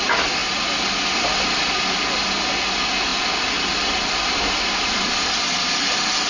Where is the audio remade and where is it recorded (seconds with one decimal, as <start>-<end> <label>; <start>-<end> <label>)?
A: 0.0-6.3 recorded